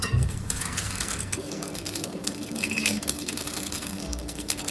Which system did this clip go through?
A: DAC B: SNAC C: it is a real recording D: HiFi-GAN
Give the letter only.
B